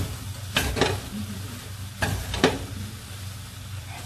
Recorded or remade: recorded